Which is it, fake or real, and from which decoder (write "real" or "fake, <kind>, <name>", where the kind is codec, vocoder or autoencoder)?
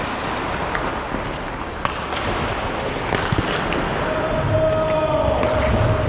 real